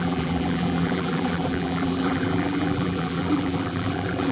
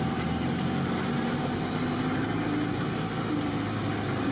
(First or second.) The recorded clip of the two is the second